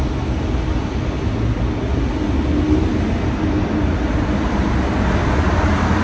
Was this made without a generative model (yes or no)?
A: yes